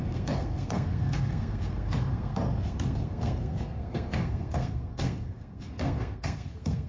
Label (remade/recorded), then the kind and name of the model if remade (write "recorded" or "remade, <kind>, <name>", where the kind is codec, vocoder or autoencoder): remade, codec, SNAC